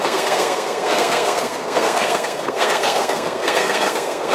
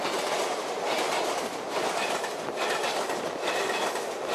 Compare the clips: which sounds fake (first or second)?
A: first